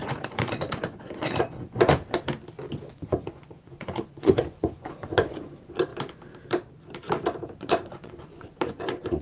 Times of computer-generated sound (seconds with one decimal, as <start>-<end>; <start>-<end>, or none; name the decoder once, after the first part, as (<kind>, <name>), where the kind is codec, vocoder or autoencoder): 0.0-1.9 (vocoder, Vocos); 2.9-5.9; 7.6-9.2